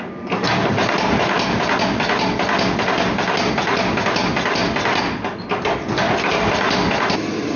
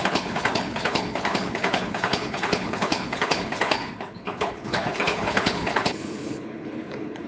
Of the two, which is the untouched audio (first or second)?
first